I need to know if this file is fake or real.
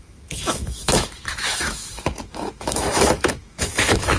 fake